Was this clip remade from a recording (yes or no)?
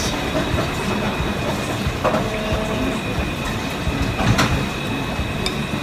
no